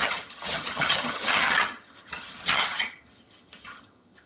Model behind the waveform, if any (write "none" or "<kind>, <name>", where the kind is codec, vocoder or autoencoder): vocoder, HiFi-GAN